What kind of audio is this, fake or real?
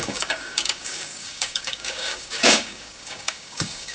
fake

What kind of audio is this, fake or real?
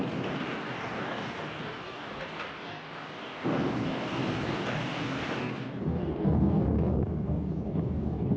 fake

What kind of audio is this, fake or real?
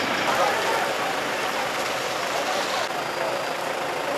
real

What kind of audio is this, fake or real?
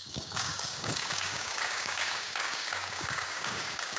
fake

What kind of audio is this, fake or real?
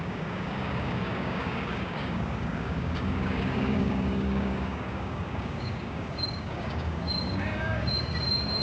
fake